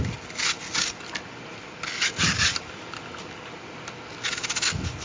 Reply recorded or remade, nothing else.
recorded